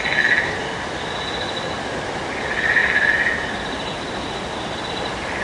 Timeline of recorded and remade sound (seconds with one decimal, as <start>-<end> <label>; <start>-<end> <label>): 0.0-5.4 recorded